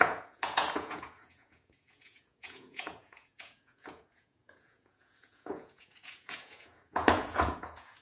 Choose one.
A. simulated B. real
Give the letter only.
A